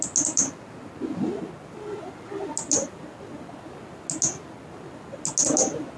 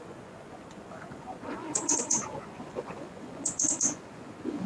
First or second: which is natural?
first